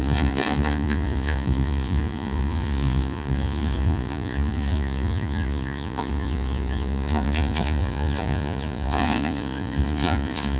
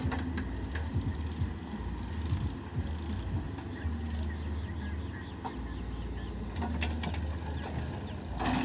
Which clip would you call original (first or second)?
second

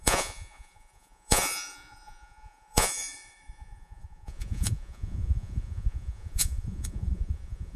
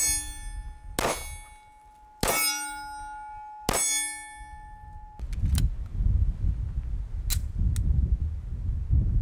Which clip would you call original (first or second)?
second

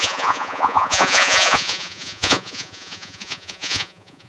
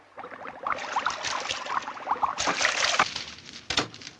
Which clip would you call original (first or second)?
second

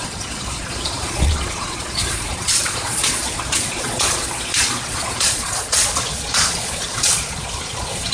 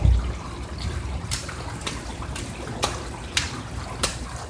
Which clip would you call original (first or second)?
second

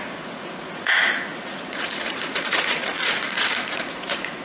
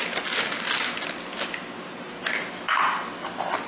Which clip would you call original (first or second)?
second